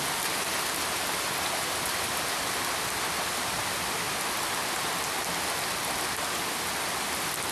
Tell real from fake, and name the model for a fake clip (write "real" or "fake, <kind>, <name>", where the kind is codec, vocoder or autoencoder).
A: real